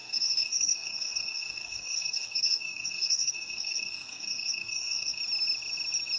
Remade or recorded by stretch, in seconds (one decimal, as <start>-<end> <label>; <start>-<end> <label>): 0.0-5.2 remade; 5.2-6.2 recorded